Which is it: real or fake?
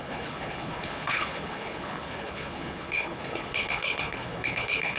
fake